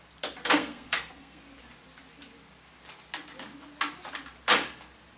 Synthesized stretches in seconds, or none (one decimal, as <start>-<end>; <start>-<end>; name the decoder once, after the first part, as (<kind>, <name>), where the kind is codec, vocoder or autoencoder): 0.4-1.4 (codec, SNAC)